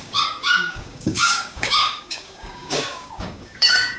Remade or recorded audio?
remade